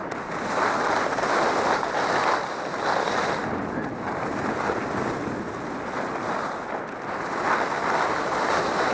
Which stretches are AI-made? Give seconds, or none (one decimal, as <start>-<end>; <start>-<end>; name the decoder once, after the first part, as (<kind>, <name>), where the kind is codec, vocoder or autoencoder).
none